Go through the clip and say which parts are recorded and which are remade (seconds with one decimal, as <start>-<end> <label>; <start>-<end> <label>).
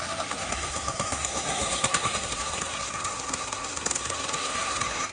0.0-5.1 remade